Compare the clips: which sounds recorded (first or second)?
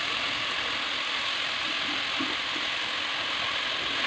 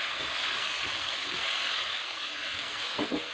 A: first